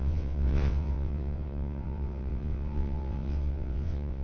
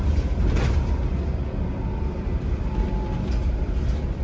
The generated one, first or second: first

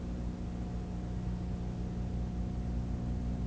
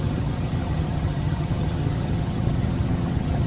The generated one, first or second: second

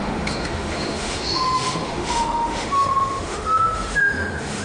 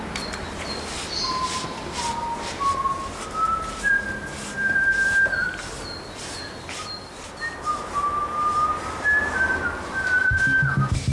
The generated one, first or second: first